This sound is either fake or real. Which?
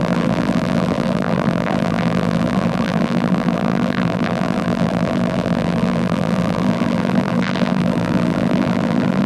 fake